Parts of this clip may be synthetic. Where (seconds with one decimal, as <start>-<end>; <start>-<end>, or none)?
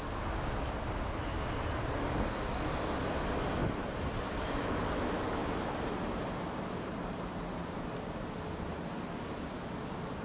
3.6-4.9; 5.4-7.9